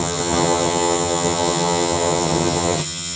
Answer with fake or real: fake